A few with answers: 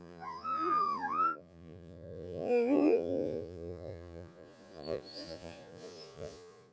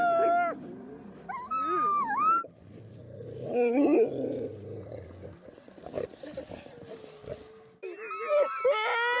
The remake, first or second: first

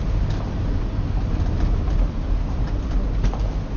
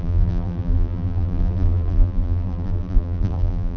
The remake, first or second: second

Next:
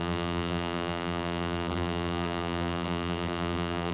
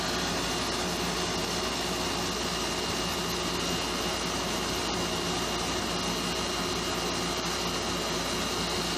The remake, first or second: first